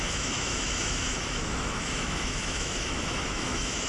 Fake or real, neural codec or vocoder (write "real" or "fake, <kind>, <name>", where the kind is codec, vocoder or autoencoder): fake, autoencoder, DAC-VAE